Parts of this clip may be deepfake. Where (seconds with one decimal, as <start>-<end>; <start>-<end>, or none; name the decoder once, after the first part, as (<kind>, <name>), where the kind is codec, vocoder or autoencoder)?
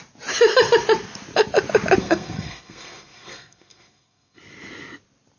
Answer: 2.0-4.4 (codec, SNAC)